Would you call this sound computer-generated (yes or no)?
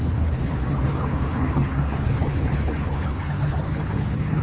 yes